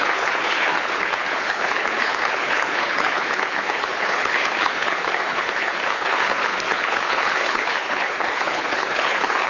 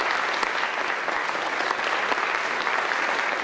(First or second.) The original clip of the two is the second